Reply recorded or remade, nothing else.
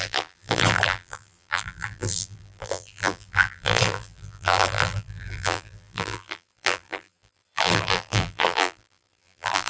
remade